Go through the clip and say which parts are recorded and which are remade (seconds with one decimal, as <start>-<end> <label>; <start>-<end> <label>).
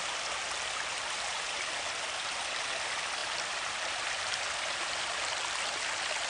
0.0-6.3 recorded